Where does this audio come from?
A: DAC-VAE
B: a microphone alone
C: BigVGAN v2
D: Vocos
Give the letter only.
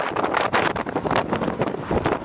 B